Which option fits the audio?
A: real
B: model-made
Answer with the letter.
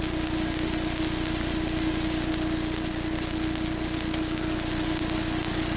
A